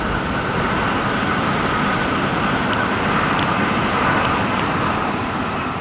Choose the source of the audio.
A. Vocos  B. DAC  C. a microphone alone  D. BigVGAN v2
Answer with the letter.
C